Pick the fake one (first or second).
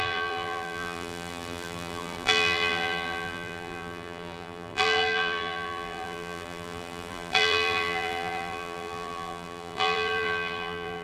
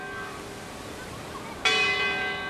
first